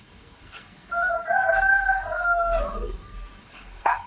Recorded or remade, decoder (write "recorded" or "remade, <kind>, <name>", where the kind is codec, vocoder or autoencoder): remade, codec, SNAC